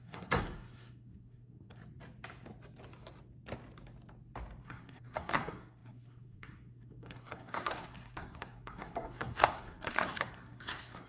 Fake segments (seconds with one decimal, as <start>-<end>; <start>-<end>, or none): 0.0-1.8; 4.6-11.1